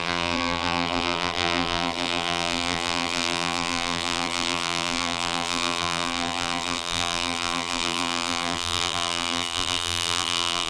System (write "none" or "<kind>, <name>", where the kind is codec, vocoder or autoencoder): vocoder, BigVGAN v2